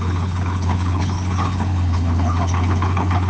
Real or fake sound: fake